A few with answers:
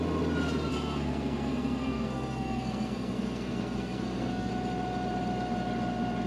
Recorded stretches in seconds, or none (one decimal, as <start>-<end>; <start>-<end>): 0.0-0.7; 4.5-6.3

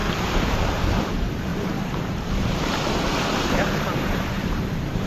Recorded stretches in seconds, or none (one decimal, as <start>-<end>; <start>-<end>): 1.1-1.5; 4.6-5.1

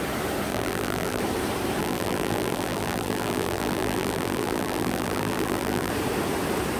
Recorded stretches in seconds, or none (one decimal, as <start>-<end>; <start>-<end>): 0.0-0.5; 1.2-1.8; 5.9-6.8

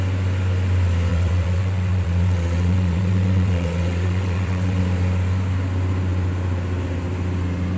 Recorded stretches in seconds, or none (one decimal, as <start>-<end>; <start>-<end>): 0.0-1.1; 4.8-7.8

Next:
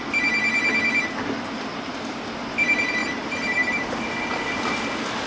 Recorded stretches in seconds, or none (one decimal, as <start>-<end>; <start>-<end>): 0.0-3.0; 3.9-5.3

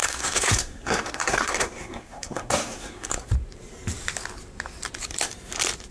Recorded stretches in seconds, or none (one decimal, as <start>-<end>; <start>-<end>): 3.3-5.9